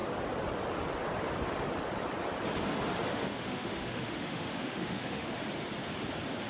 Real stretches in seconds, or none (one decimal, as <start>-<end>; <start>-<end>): 0.0-3.1; 5.4-6.5